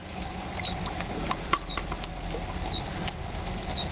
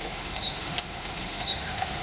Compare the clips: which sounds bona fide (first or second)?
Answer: first